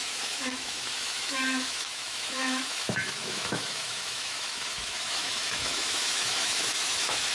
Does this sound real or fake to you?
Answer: fake